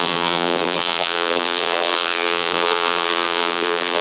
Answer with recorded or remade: remade